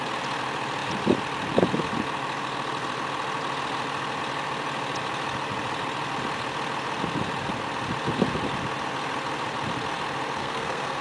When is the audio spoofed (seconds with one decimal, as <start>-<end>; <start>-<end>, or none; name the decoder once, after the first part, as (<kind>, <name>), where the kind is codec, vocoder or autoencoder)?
10.4-11.0 (codec, SNAC)